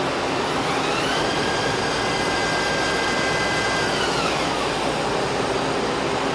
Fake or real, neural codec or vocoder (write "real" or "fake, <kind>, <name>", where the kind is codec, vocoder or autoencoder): real